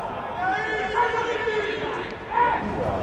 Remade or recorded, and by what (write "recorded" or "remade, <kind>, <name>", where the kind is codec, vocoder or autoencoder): recorded